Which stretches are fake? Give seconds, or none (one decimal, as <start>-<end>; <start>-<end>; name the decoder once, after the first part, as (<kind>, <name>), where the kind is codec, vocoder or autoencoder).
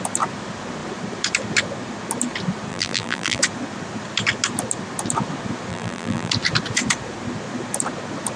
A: 2.7-3.4 (vocoder, BigVGAN v2); 5.7-6.3